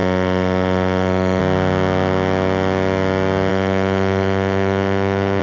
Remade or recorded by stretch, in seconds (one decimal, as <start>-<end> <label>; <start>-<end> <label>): 0.0-1.4 remade; 1.4-3.5 recorded; 3.5-5.4 remade